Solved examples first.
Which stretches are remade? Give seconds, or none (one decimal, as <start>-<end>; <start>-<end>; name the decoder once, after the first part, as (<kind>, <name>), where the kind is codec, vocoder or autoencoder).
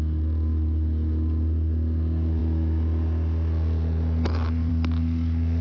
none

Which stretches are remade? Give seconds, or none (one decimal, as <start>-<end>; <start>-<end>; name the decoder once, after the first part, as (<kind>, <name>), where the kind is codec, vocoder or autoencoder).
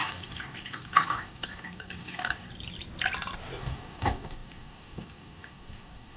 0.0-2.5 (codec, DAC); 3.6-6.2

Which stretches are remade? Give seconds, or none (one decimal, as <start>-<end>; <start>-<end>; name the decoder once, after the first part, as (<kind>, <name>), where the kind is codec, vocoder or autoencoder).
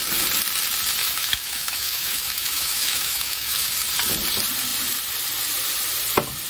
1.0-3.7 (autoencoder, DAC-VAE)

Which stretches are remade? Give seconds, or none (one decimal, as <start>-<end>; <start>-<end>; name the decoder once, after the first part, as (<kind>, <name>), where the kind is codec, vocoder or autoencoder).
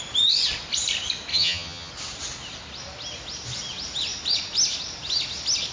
1.3-1.9 (vocoder, HiFi-GAN)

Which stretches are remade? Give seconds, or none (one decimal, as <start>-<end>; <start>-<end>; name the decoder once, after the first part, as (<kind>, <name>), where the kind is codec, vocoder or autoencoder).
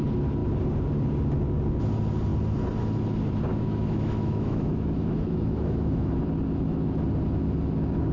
3.5-6.1 (autoencoder, DAC-VAE)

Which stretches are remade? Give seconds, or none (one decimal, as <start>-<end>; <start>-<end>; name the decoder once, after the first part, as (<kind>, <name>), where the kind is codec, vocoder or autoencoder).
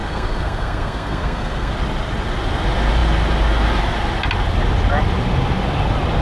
0.0-1.7 (codec, SNAC)